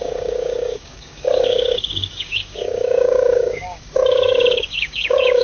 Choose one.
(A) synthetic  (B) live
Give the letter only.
A